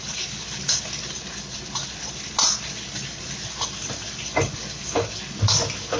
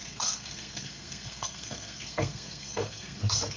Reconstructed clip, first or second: second